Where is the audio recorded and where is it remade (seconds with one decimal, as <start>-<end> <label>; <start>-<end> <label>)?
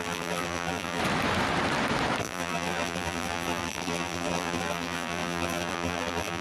0.0-1.0 remade; 1.0-2.2 recorded; 2.2-6.4 remade